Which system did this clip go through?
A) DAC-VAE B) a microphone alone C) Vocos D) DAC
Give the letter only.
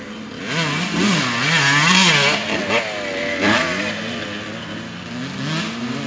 B